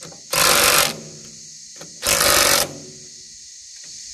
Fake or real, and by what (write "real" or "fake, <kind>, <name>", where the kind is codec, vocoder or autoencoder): real